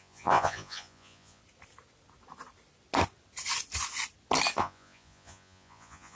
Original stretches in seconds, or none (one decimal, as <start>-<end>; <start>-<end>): 1.4-4.6